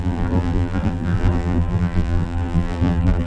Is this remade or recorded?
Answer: remade